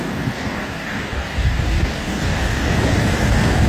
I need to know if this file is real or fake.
fake